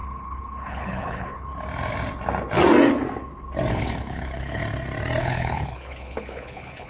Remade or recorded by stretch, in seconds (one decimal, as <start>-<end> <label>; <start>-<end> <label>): 0.0-1.5 remade; 1.5-3.7 recorded; 3.7-4.6 remade; 4.6-5.2 recorded; 5.2-6.9 remade